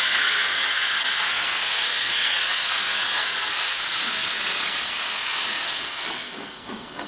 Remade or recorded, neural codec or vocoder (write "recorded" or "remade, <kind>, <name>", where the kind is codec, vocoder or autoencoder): remade, codec, SNAC